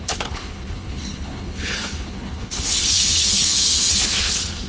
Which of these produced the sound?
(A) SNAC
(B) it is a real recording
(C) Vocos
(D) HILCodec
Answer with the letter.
D